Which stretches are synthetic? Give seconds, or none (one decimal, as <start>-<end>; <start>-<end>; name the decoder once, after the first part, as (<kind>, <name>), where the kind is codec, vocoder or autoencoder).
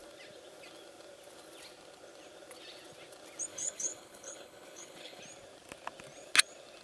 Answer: 3.5-5.2 (codec, HILCodec)